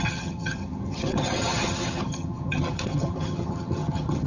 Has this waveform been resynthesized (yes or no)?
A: yes